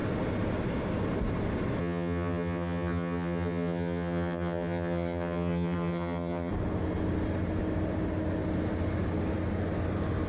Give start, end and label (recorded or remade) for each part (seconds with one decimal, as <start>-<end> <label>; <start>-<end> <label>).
0.0-1.8 recorded; 1.8-6.5 remade; 6.5-10.3 recorded